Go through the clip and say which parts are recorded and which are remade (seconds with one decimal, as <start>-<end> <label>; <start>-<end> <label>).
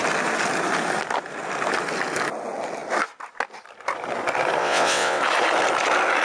0.0-4.6 recorded; 4.6-5.2 remade; 5.2-6.2 recorded